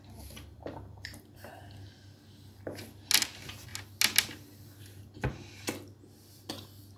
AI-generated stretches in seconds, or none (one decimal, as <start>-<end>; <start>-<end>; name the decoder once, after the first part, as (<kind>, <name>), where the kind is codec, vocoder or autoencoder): 0.5-1.2 (vocoder, BigVGAN v2)